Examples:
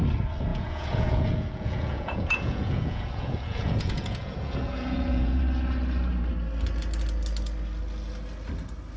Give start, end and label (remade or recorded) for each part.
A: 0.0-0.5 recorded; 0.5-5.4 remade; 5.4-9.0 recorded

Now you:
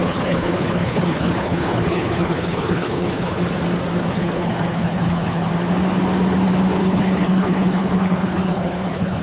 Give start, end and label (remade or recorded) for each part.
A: 0.0-3.4 remade; 3.4-4.1 recorded; 4.1-5.5 remade; 5.5-6.8 recorded; 6.8-9.2 remade

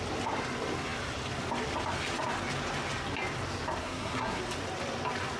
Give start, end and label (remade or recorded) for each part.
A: 0.0-3.8 recorded; 3.8-4.4 remade; 4.4-5.4 recorded

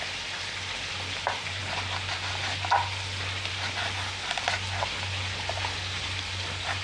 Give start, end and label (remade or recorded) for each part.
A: 0.0-6.8 recorded

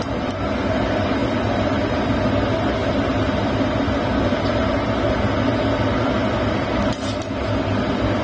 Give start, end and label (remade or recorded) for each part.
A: 0.0-8.2 recorded

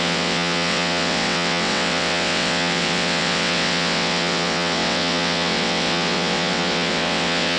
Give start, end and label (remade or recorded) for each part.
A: 0.0-7.6 remade

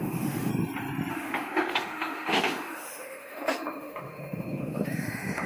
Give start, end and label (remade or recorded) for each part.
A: 0.0-0.5 remade; 0.5-1.1 recorded; 1.1-5.5 remade